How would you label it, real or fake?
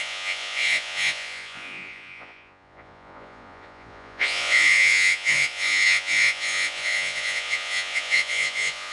fake